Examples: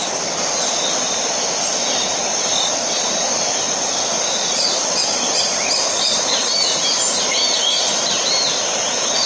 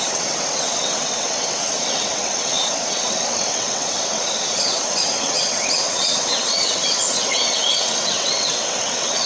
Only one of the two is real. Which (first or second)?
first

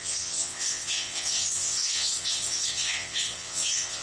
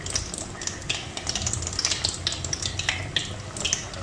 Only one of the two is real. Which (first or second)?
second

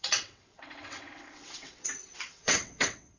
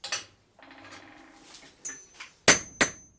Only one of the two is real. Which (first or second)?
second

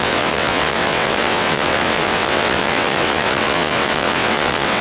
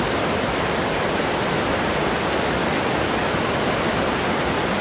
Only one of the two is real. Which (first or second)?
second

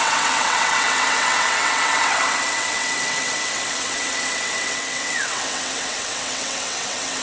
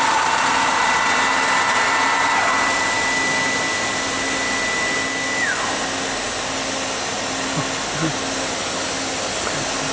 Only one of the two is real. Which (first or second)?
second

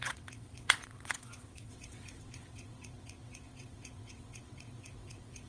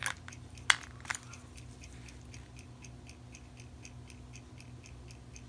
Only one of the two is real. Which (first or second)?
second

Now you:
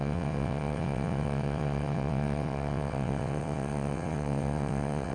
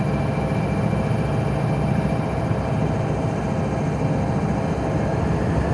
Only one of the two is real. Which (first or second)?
second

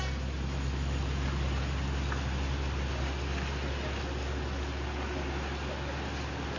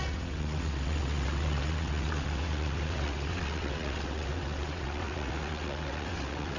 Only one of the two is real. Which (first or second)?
first